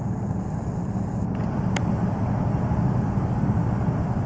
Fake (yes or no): no